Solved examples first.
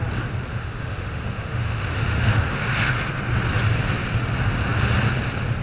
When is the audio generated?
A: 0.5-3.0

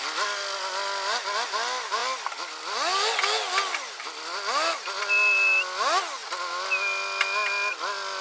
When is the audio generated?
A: none

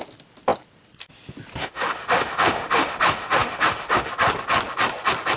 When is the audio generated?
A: 1.6-4.1

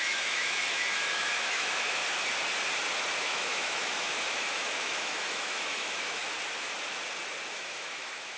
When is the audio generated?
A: 0.0-2.0; 3.2-6.2; 7.5-8.4

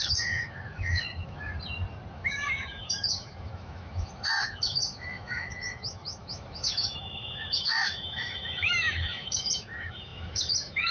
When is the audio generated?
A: 0.0-1.5; 2.1-10.9

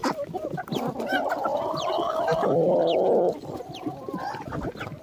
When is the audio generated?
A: none

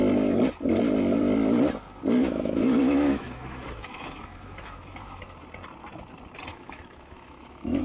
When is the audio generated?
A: 2.2-5.2; 6.5-7.8